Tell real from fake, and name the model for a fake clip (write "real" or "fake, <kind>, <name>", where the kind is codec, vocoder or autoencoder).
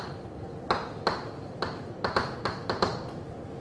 real